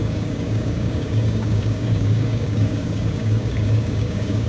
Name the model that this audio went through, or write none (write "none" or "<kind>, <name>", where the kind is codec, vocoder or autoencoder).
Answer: codec, DAC